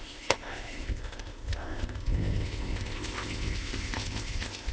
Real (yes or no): no